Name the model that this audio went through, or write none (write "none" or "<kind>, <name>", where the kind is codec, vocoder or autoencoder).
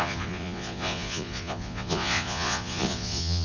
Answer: vocoder, Vocos